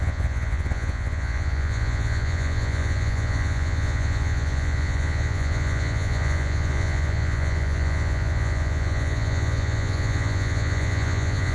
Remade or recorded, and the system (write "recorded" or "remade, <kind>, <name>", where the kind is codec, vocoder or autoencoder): remade, vocoder, Vocos